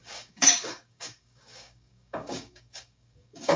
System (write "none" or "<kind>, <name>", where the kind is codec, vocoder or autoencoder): codec, DAC